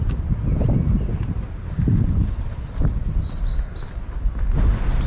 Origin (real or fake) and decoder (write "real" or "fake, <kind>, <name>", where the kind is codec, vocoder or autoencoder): real